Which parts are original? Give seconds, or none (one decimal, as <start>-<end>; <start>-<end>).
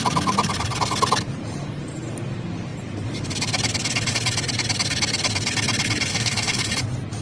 0.0-6.1; 6.7-7.2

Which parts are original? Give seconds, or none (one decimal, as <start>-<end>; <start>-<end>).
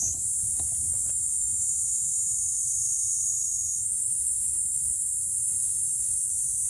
0.0-0.9; 1.6-3.3; 6.3-6.7